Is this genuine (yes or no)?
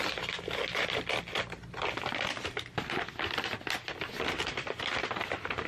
yes